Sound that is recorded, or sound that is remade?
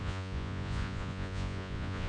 remade